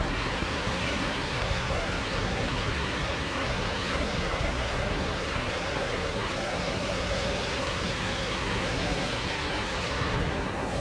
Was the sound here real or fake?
fake